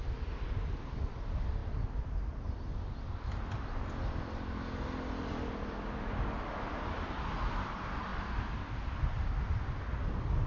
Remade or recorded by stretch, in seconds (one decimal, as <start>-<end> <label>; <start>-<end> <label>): 0.0-10.5 recorded